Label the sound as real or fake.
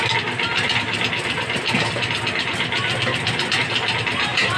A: real